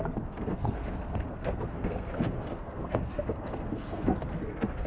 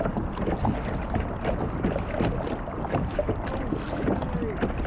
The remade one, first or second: first